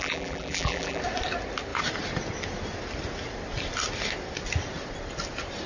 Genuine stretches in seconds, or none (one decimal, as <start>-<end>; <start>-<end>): 1.0-5.7